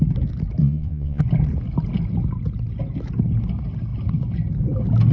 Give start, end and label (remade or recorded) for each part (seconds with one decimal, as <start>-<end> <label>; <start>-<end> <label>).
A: 0.0-0.6 recorded; 0.6-1.2 remade; 1.2-5.1 recorded